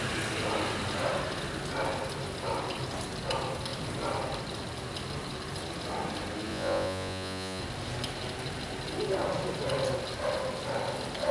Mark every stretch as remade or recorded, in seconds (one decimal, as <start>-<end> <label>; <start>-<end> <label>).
0.0-6.5 recorded; 6.5-7.6 remade; 7.6-11.3 recorded